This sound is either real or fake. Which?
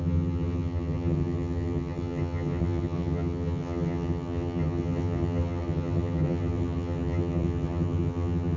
fake